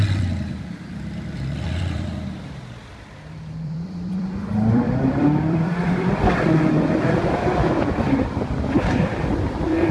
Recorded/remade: remade